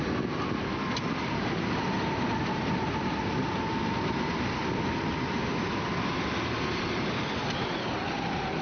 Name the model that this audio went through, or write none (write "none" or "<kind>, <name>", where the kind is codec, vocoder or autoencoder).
none